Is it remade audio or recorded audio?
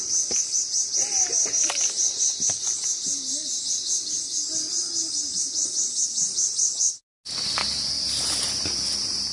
recorded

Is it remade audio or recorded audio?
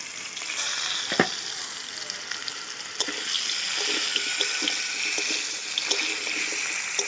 recorded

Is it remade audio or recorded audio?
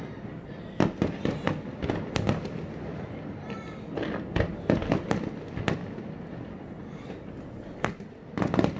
recorded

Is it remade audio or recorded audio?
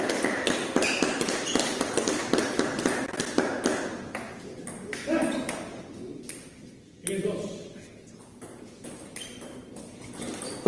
recorded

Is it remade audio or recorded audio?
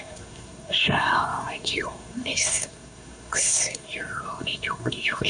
remade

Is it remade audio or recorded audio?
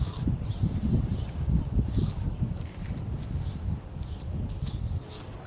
recorded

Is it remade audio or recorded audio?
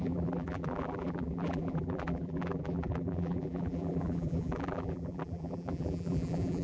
remade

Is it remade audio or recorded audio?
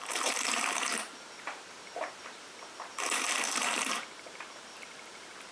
remade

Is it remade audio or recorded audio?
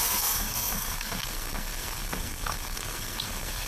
remade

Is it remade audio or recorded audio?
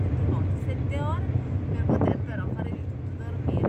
recorded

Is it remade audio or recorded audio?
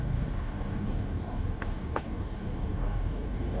remade